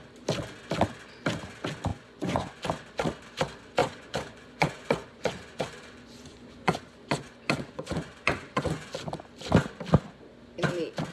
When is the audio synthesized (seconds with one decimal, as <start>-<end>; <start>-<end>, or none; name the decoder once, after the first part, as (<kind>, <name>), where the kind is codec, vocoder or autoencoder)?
1.9-2.6 (vocoder, Vocos); 3.8-8.9